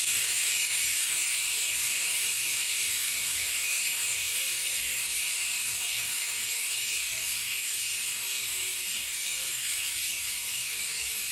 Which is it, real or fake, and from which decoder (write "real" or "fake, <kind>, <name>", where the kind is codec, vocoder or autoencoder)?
fake, codec, DAC